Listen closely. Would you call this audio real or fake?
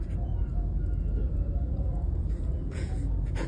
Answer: fake